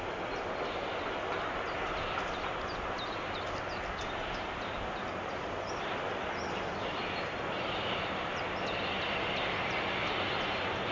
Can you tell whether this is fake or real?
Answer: real